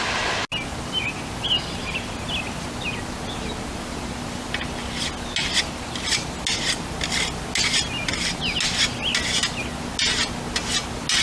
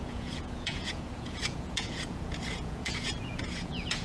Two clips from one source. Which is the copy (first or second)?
second